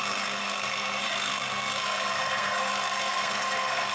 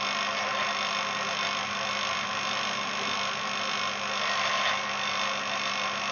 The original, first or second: second